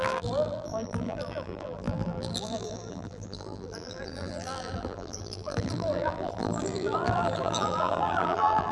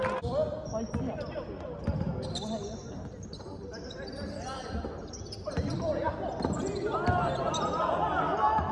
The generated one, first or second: first